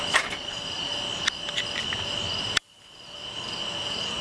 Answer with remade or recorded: recorded